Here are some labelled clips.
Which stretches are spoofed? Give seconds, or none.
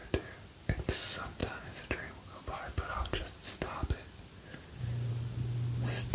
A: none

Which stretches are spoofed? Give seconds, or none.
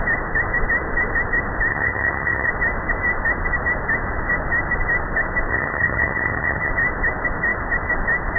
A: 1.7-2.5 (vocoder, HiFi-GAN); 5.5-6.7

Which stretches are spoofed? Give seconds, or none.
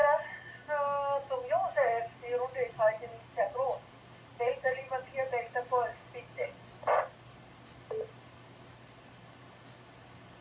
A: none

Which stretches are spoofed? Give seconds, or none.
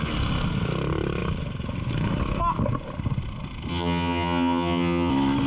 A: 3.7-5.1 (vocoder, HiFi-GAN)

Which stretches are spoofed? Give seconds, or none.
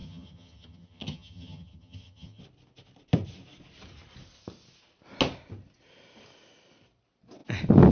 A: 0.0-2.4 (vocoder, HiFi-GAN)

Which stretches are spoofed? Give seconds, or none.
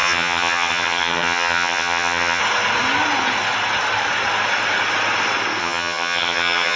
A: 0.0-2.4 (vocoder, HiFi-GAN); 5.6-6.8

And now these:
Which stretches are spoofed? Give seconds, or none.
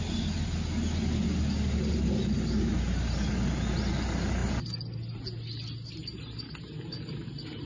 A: none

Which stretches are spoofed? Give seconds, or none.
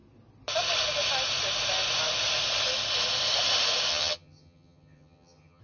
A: 3.9-5.6 (vocoder, HiFi-GAN)